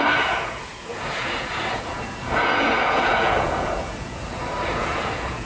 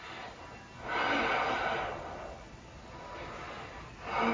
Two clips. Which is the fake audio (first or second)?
first